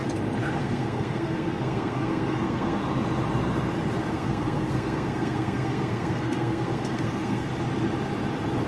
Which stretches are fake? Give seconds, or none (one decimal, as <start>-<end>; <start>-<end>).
0.6-2.8; 4.1-7.5